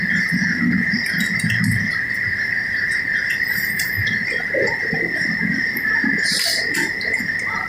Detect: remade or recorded remade